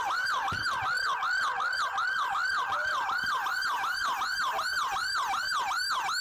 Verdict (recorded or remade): recorded